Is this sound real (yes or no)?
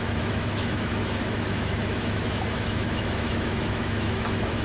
no